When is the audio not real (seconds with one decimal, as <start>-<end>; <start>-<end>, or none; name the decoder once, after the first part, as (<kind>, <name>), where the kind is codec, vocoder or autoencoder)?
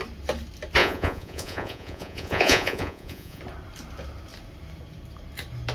0.8-3.4 (vocoder, Vocos)